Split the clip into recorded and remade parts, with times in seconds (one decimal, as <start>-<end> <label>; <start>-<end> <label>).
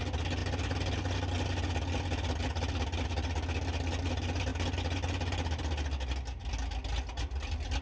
0.0-7.8 recorded